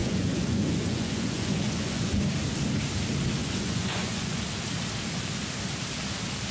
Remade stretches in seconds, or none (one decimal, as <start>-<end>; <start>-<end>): 0.0-2.2; 3.4-4.4